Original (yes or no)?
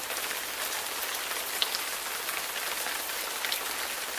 yes